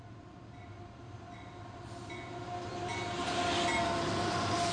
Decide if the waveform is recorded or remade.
recorded